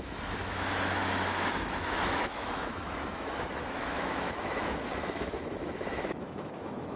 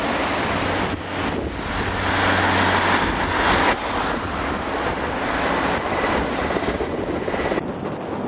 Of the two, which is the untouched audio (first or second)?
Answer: second